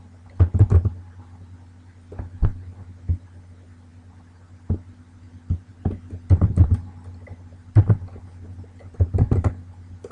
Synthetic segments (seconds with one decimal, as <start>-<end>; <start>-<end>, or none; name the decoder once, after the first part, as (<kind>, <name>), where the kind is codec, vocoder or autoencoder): none